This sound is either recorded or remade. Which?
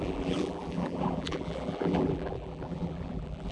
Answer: remade